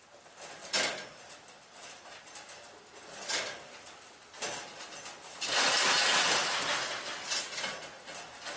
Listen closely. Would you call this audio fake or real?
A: real